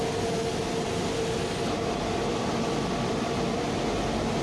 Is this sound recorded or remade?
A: recorded